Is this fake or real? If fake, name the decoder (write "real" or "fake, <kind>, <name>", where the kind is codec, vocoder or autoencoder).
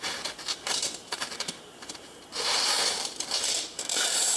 fake, vocoder, BigVGAN v2